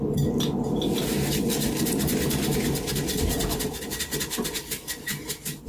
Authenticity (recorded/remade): recorded